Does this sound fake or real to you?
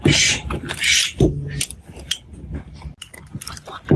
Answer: real